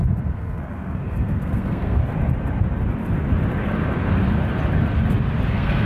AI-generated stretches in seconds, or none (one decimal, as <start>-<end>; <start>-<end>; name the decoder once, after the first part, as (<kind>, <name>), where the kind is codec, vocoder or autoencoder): 0.0-2.0 (codec, SNAC); 5.5-5.9